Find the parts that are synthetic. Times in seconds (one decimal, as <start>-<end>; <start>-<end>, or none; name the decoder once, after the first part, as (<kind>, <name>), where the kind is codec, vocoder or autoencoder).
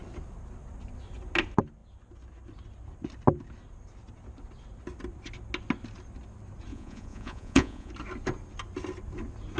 6.7-7.9 (vocoder, Vocos)